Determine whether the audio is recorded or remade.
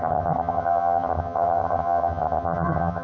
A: remade